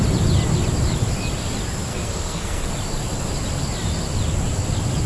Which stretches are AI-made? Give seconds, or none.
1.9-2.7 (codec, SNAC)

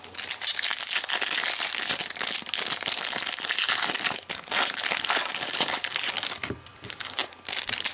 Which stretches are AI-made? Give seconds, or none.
none

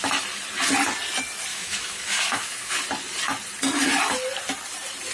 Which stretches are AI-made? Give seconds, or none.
1.5-2.8 (autoencoder, DAC-VAE)

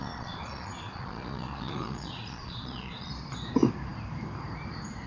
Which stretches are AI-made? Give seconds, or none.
0.0-3.1 (vocoder, Vocos)

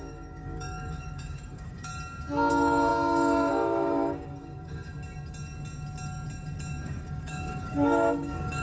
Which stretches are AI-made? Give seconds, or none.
0.0-1.9 (codec, DAC); 2.5-4.9; 6.8-8.6